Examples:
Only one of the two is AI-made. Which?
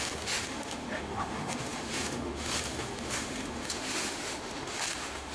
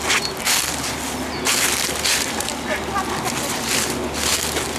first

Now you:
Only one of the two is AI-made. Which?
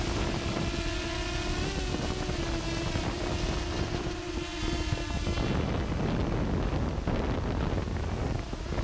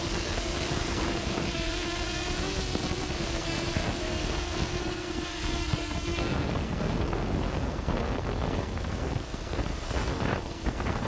second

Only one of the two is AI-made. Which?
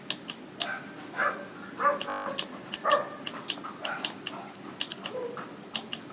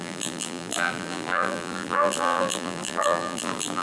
second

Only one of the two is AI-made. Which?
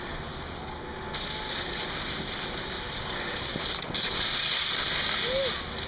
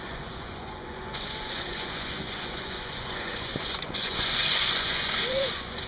second